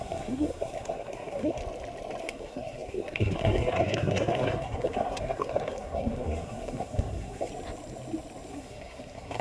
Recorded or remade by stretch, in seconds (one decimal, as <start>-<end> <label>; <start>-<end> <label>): 0.0-1.6 remade; 1.6-2.2 recorded; 2.2-7.5 remade; 7.5-8.5 recorded; 8.5-9.4 remade

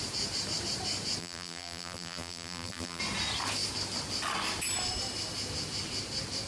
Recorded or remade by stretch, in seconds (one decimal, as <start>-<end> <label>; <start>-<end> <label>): 0.0-1.2 recorded; 1.2-3.0 remade; 3.0-6.5 recorded

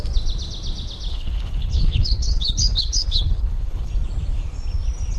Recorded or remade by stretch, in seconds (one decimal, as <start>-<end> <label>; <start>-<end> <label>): 0.0-1.1 recorded; 1.1-3.9 remade; 3.9-5.2 recorded

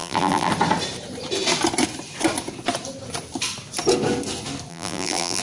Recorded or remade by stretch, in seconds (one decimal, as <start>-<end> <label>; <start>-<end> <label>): 0.0-0.5 remade; 0.5-4.7 recorded; 4.7-5.4 remade

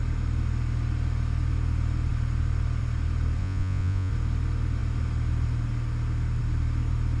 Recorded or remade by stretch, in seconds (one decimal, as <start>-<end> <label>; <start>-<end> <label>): 0.0-3.4 recorded; 3.4-4.1 remade; 4.1-7.2 recorded

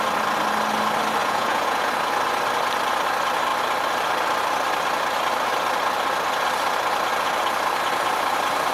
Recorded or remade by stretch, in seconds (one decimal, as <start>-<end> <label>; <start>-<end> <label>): 0.0-1.2 recorded; 1.2-1.9 remade; 1.9-8.7 recorded

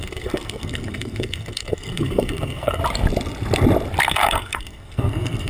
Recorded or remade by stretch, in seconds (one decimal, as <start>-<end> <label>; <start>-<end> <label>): 0.0-2.8 remade; 2.8-4.0 recorded; 4.0-5.5 remade

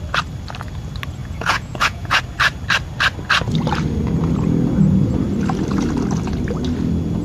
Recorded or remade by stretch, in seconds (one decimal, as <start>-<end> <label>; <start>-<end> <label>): 0.0-1.2 recorded; 1.2-2.2 remade; 2.2-7.2 recorded